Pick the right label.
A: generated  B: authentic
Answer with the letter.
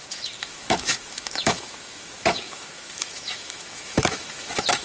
A